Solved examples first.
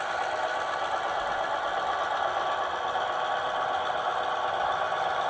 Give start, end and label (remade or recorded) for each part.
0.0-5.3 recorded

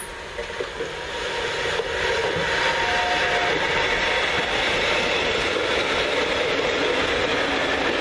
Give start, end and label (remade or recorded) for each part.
0.0-8.0 recorded